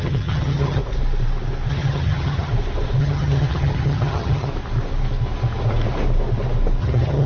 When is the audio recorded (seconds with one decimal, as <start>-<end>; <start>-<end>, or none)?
0.8-1.7; 2.5-3.0; 4.5-6.8